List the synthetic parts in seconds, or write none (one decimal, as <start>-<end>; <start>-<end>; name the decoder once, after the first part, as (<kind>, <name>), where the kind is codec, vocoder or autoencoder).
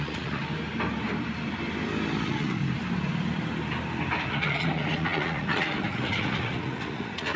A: 0.0-0.4 (vocoder, Vocos); 2.2-2.6; 4.3-7.4